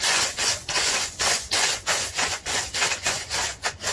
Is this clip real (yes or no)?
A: no